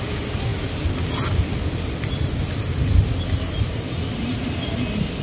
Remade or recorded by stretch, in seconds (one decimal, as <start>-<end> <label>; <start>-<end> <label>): 0.0-5.2 recorded